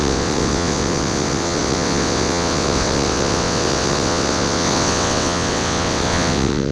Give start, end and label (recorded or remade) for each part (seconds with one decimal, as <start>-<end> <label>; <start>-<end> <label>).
0.0-6.7 remade